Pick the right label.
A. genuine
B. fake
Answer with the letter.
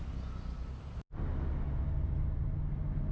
A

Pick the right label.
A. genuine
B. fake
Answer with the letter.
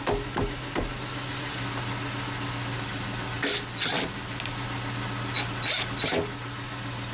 A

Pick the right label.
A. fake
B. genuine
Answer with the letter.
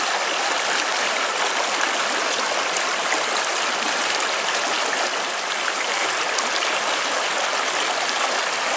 B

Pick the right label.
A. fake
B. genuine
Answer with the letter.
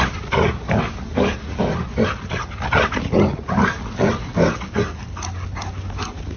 B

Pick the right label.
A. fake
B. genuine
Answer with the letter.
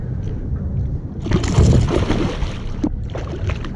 B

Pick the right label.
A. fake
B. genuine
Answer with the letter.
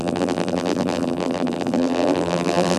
A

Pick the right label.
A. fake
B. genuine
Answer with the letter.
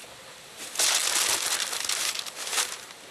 B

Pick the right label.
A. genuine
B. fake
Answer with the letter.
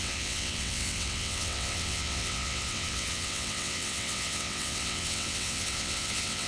B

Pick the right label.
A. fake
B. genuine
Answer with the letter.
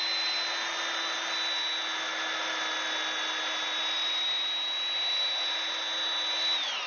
B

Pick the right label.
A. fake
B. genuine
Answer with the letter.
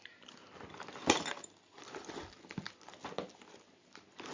B